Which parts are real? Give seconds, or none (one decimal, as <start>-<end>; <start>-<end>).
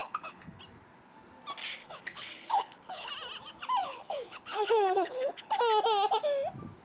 0.6-1.8; 3.1-3.8; 5.5-6.8